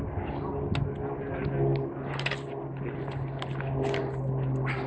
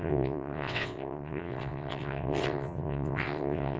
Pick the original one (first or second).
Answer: first